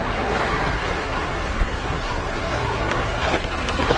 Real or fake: fake